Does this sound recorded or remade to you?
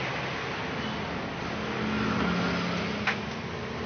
recorded